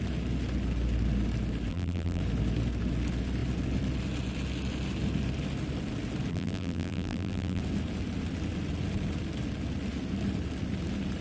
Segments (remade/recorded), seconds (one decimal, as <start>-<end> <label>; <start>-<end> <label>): 0.0-1.7 recorded; 1.7-2.2 remade; 2.2-6.3 recorded; 6.3-7.6 remade; 7.6-11.2 recorded